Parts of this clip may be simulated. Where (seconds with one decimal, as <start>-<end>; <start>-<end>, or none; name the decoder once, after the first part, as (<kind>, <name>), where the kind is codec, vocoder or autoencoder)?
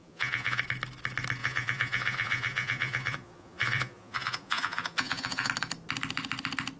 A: 0.0-0.6 (vocoder, Vocos); 1.4-5.5